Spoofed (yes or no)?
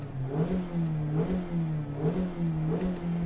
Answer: no